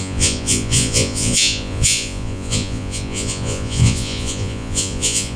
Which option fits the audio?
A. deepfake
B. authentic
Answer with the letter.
A